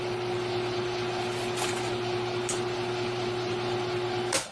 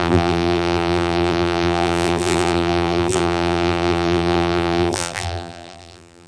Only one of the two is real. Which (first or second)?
first